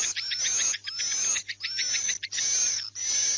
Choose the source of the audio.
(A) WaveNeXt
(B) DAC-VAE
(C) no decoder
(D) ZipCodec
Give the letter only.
C